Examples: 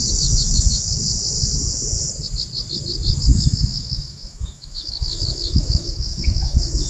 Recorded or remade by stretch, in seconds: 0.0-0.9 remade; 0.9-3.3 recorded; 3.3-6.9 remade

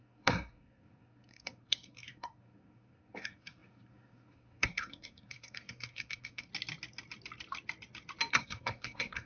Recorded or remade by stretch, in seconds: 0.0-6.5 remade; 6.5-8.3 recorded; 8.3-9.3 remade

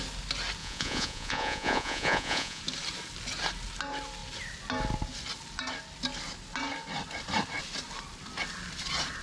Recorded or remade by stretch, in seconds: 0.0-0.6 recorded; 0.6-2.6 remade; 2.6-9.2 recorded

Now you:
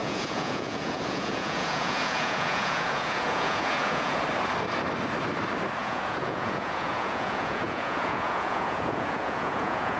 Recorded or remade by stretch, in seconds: 0.0-4.2 remade; 4.2-5.8 recorded; 5.8-10.0 remade